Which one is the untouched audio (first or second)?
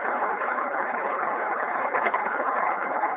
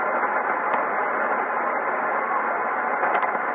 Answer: second